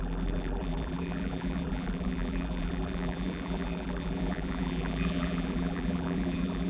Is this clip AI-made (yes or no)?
yes